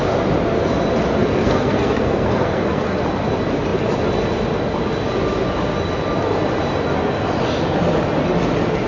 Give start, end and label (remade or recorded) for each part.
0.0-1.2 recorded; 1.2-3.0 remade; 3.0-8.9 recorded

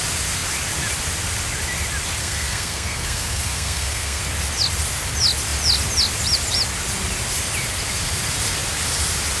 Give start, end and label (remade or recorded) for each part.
0.0-2.2 recorded; 2.2-4.2 remade; 4.2-9.4 recorded

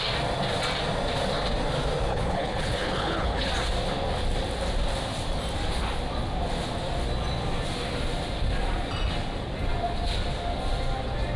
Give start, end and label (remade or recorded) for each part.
0.0-2.1 recorded; 2.1-3.5 remade; 3.5-11.4 recorded

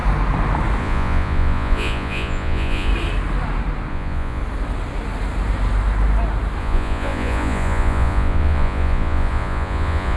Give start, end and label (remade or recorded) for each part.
0.0-0.8 recorded; 0.8-2.9 remade; 2.9-3.9 recorded; 3.9-4.4 remade; 4.4-6.6 recorded; 6.6-10.2 remade

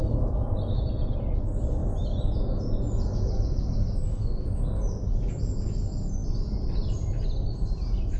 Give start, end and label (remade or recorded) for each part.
0.0-4.1 recorded; 4.1-4.6 remade; 4.6-8.2 recorded

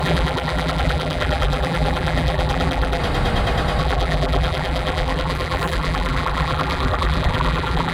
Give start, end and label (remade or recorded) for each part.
0.0-3.0 remade; 3.0-3.8 recorded; 3.8-7.9 remade